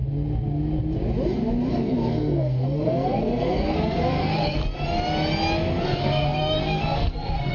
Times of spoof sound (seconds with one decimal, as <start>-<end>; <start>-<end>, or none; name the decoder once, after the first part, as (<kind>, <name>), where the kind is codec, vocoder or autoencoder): 1.7-4.6 (codec, SNAC); 5.8-7.5